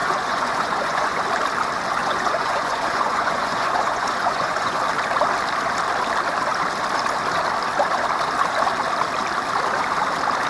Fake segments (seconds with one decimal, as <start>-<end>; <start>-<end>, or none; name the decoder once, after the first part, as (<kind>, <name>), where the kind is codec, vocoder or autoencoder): 0.0-1.2 (vocoder, Vocos); 2.0-4.8